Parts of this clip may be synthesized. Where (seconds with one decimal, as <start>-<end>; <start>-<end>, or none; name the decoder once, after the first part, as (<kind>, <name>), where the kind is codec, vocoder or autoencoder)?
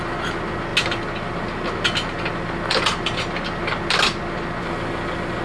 none